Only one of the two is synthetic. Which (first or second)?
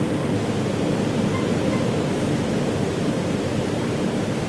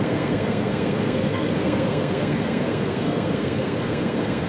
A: second